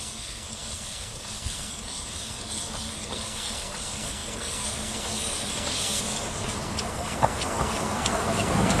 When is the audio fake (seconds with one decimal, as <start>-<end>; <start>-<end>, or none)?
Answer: 0.0-8.8